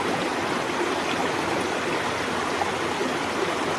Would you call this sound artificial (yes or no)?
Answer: no